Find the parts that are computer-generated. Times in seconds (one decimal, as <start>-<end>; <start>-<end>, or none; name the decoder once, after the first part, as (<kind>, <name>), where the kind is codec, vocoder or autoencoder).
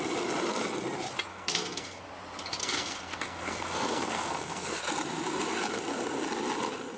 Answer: 1.3-2.0 (codec, SNAC); 2.6-4.8